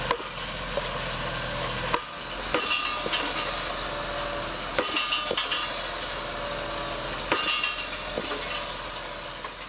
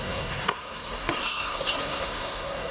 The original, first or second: first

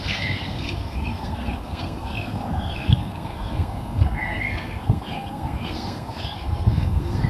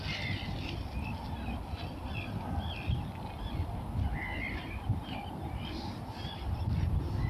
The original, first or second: second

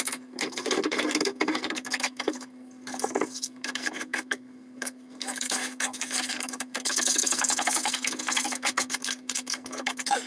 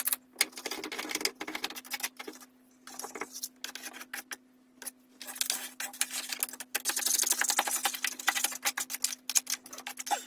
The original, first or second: second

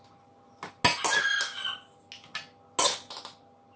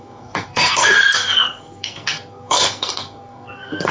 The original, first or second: first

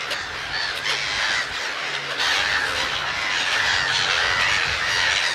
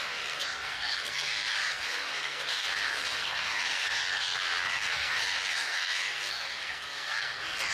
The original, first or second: first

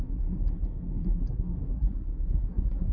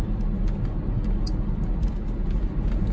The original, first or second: second